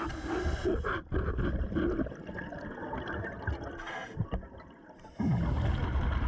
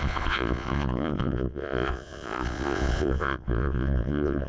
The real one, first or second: first